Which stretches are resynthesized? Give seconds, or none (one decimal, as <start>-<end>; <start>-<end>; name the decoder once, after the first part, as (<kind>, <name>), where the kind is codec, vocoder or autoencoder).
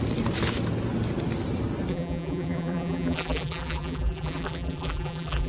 1.9-5.5 (vocoder, BigVGAN v2)